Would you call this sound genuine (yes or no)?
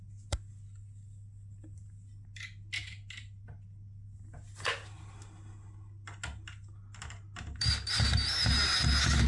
yes